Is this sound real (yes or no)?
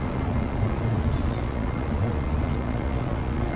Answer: no